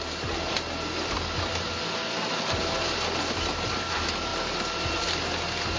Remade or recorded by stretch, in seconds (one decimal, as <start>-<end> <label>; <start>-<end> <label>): 0.0-5.8 recorded